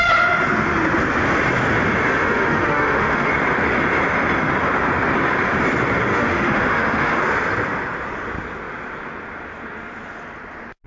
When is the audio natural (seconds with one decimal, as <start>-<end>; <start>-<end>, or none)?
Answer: 0.0-2.1; 3.3-6.1; 7.2-10.9